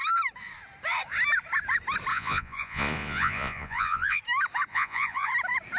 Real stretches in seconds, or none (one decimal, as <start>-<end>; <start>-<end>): 0.0-2.1; 4.2-4.7; 5.3-5.8